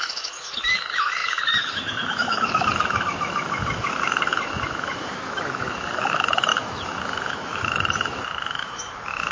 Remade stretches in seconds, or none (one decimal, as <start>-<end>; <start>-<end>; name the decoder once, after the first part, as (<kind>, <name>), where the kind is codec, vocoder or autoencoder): 0.0-9.3 (autoencoder, DAC-VAE)